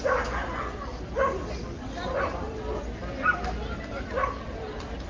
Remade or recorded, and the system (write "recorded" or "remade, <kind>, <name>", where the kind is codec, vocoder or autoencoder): recorded